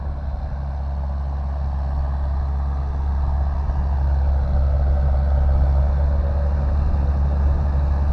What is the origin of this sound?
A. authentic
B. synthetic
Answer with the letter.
A